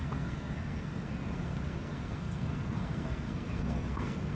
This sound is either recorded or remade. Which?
remade